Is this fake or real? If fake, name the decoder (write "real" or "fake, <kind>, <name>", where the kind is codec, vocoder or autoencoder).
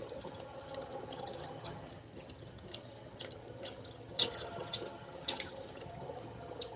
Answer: fake, vocoder, HiFi-GAN